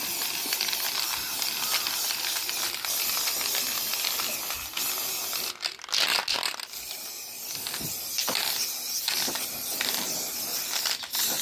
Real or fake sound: real